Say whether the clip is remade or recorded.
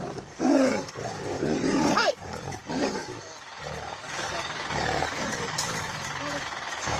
remade